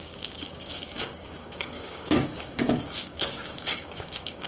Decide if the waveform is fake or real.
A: fake